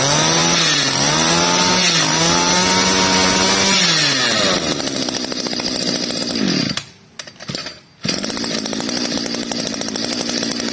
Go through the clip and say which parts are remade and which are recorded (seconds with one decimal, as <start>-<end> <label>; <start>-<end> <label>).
0.0-10.7 recorded